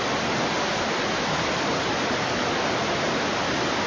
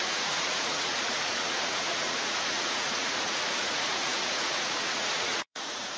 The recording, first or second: first